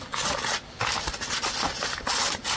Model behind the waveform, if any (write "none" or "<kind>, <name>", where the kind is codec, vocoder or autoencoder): none